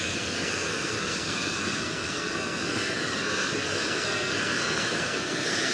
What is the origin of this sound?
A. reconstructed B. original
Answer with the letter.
A